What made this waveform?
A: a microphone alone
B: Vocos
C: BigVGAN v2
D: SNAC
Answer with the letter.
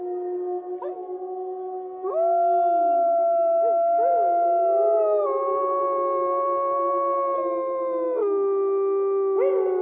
A